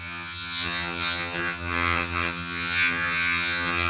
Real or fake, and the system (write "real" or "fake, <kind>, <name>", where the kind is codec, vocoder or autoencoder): fake, vocoder, HiFi-GAN